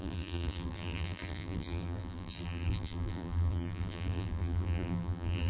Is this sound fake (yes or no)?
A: yes